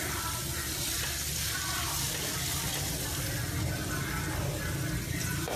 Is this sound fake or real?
real